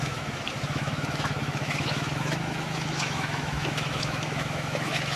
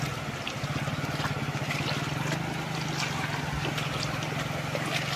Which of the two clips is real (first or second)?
second